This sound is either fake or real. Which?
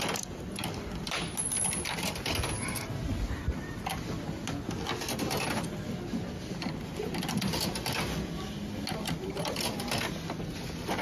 real